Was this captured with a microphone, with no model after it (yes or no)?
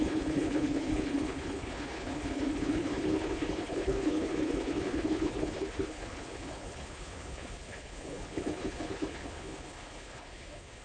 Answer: no